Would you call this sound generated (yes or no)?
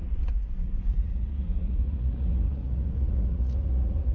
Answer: yes